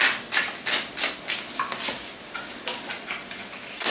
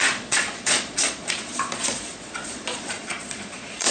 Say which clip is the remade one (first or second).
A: second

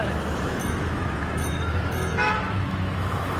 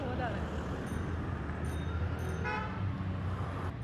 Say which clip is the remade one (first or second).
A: first